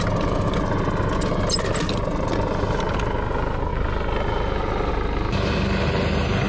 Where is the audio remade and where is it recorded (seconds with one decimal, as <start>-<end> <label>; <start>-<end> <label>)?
0.0-6.5 recorded